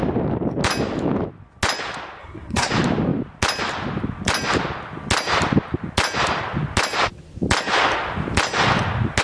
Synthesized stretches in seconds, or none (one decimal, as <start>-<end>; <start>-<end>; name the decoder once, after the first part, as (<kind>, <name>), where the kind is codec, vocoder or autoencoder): 2.2-2.7 (codec, SNAC)